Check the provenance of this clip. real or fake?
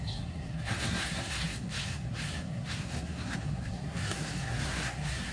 fake